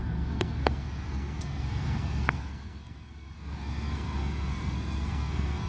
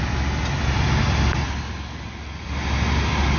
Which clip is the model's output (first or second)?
first